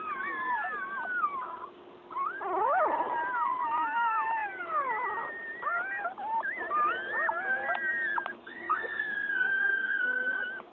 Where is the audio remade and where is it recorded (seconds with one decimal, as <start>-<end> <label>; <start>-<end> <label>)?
0.0-8.4 recorded; 8.4-10.0 remade; 10.0-10.7 recorded